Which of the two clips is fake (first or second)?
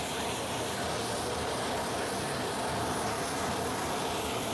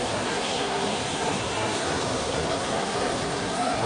second